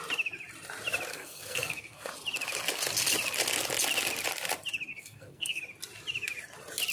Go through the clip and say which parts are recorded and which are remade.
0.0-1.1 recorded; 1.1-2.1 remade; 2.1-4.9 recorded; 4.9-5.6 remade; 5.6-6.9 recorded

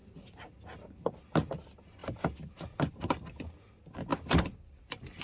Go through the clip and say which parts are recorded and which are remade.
0.0-4.1 recorded; 4.1-5.2 remade

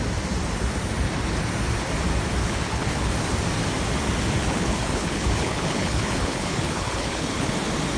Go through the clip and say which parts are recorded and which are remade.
0.0-2.4 recorded; 2.4-3.1 remade; 3.1-4.4 recorded; 4.4-7.5 remade; 7.5-8.0 recorded

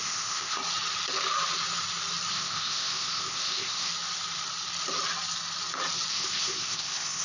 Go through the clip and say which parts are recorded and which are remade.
0.0-0.6 remade; 0.6-2.3 recorded; 2.3-3.9 remade; 3.9-6.1 recorded; 6.1-7.2 remade

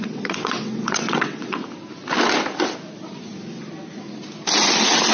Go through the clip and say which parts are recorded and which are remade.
0.0-1.6 remade; 1.6-5.1 recorded

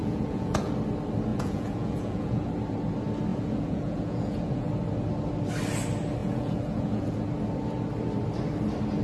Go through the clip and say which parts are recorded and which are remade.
0.0-0.7 remade; 0.7-1.3 recorded; 1.3-2.5 remade; 2.5-3.3 recorded; 3.3-4.7 remade; 4.7-6.2 recorded; 6.2-7.2 remade; 7.2-9.0 recorded